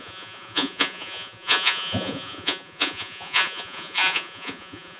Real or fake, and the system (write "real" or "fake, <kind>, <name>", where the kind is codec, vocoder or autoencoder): fake, vocoder, Vocos